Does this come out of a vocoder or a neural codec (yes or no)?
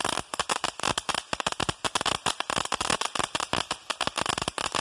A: no